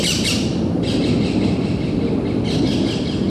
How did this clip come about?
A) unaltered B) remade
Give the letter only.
A